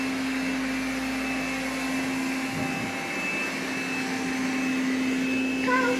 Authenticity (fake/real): real